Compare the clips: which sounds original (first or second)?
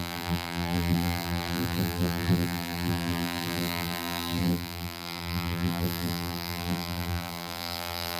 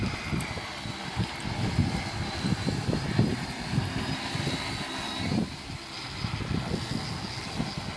second